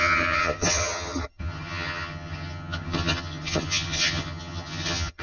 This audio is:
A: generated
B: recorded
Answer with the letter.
A